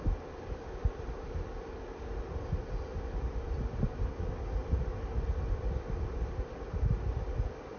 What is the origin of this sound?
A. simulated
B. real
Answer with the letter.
B